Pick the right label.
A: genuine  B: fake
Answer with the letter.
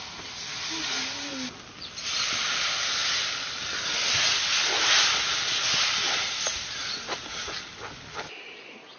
A